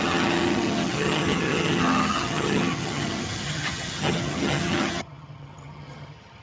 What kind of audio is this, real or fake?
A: fake